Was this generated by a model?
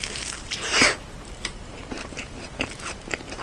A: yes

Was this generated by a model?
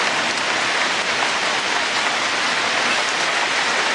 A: no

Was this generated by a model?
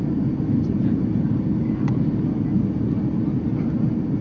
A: no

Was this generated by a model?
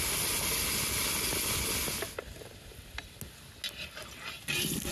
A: no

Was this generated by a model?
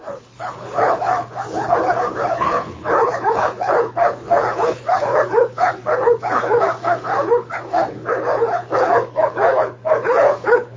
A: yes